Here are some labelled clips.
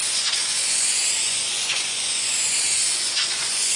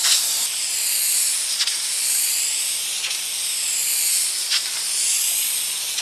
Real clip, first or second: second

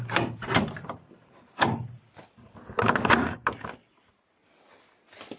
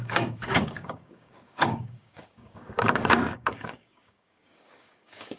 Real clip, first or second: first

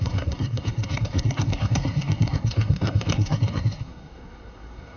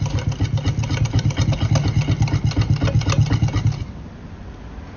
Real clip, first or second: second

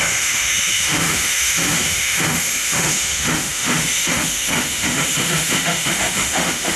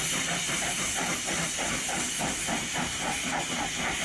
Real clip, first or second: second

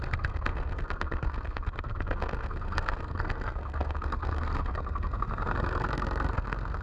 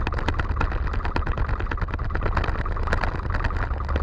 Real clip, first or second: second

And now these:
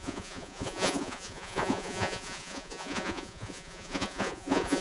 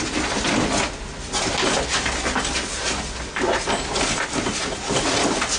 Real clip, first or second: second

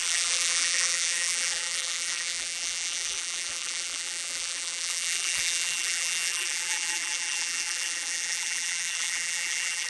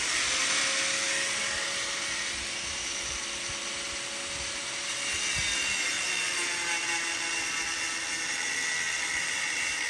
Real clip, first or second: second